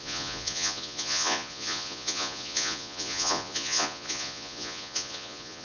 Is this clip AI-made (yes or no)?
yes